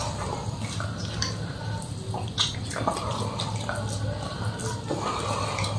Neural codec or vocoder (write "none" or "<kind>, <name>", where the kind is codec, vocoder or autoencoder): none